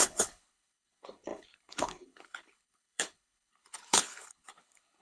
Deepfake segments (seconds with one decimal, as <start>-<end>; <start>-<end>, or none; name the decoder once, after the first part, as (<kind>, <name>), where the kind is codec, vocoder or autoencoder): 0.0-5.0 (codec, HILCodec)